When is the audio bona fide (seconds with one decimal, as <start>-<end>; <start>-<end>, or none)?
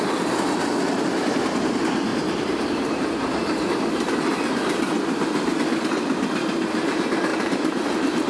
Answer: 0.0-2.1; 3.2-7.3